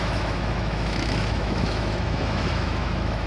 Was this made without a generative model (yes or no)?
no